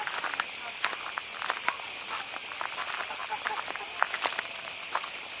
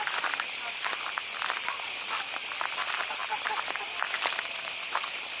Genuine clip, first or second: first